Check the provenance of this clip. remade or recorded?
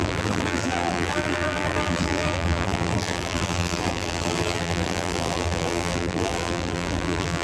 remade